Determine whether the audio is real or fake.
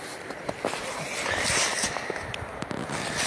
real